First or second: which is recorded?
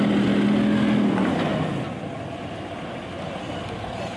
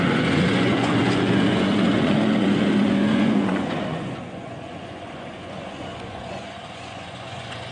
first